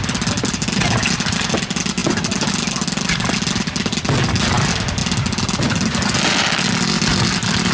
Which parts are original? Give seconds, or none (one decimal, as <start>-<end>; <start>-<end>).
0.0-7.7